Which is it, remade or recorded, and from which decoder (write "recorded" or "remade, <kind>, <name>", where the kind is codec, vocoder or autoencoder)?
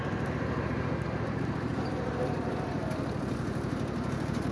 remade, vocoder, BigVGAN v2